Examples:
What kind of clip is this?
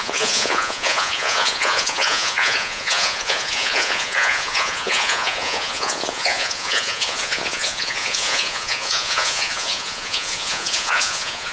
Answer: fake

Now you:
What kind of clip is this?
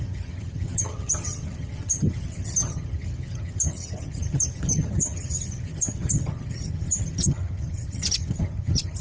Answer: fake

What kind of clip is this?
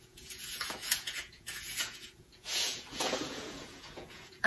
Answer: fake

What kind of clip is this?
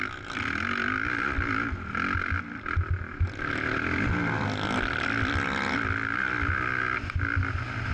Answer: real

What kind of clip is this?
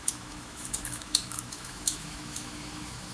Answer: fake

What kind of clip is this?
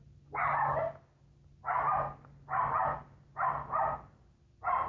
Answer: real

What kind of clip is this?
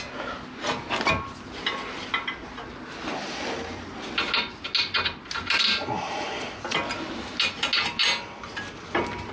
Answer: real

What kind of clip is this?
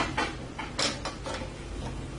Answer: real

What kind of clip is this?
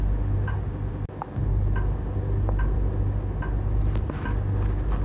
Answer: real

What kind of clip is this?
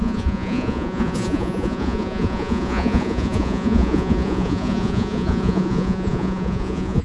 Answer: fake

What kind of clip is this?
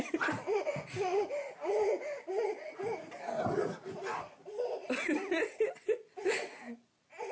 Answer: fake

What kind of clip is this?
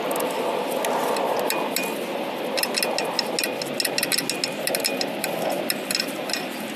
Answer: real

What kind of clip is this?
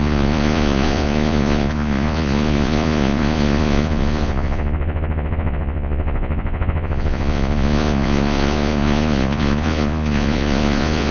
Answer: fake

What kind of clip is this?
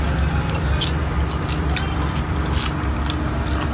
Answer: real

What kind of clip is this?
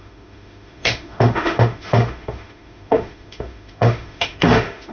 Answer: fake